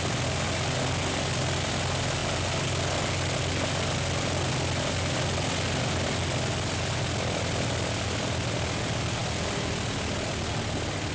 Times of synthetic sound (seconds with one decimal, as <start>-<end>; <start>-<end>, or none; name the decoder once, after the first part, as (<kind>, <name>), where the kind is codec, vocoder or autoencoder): none